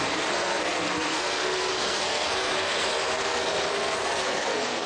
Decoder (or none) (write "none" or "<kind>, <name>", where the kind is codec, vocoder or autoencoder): codec, SNAC